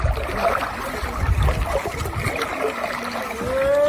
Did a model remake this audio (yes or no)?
no